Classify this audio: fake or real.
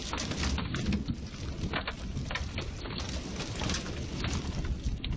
real